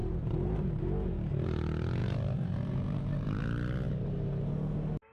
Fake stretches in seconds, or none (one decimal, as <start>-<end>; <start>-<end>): 0.0-0.8; 2.0-3.4